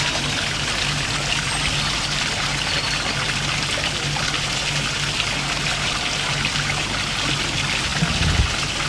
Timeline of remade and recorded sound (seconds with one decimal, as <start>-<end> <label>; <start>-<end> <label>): 0.0-8.9 recorded